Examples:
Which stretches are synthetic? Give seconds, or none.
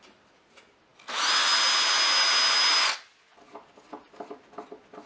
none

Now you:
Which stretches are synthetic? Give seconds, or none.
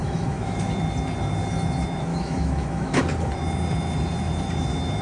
0.0-0.7 (autoencoder, DAC-VAE); 2.1-3.0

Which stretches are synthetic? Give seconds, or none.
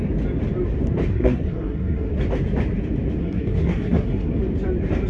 1.1-2.1 (codec, SNAC); 3.2-4.4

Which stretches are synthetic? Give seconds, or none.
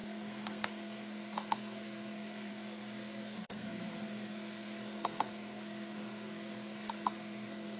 0.0-7.8 (codec, SNAC)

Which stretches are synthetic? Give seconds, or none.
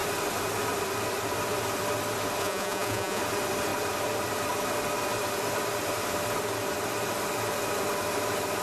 2.4-3.2 (vocoder, Vocos)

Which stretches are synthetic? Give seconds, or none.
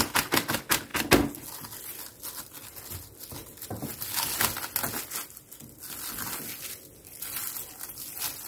none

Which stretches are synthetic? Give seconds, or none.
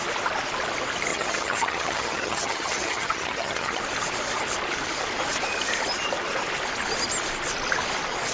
1.1-3.8 (vocoder, HiFi-GAN)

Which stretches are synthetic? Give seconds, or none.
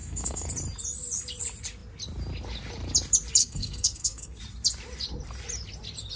0.0-0.5 (codec, SNAC); 3.4-4.4